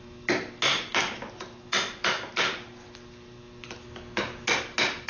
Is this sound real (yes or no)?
yes